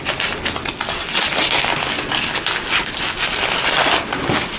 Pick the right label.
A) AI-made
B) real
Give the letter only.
B